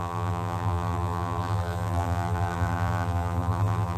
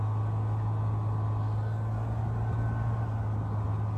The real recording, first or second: second